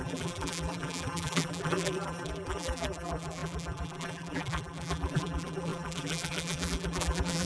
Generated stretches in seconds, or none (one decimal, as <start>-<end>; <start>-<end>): 0.0-7.5